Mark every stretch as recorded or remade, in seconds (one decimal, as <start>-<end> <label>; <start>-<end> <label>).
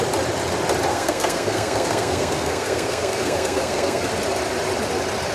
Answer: 0.0-0.9 recorded; 0.9-4.1 remade; 4.1-5.3 recorded